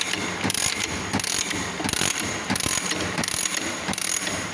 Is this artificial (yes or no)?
yes